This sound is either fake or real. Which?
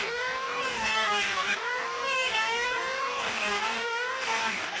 fake